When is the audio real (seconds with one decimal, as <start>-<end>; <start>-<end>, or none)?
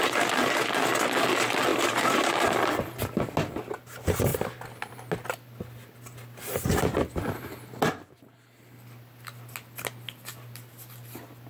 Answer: 0.0-1.7; 2.3-11.5